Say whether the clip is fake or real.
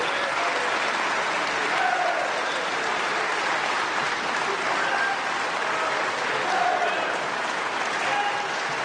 real